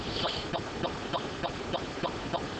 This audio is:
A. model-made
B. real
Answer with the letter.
B